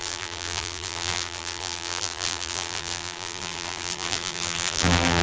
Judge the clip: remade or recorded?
remade